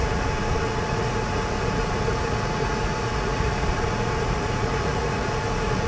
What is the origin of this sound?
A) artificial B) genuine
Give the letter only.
A